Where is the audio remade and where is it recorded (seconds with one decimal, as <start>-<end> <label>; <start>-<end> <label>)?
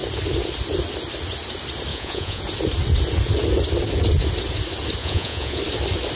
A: 0.0-1.9 recorded; 1.9-2.4 remade; 2.4-5.0 recorded; 5.0-5.6 remade; 5.6-6.2 recorded